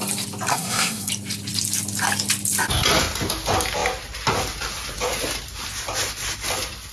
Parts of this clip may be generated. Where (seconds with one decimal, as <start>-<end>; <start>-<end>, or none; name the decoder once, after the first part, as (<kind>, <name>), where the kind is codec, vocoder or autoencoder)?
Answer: 0.5-1.1 (codec, SNAC)